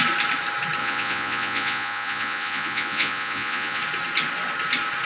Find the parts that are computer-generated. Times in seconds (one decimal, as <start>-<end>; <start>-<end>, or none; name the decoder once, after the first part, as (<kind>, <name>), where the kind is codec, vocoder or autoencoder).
0.8-3.8 (vocoder, Vocos)